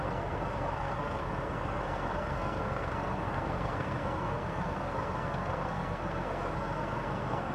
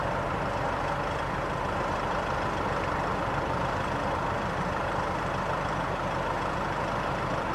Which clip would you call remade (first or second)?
first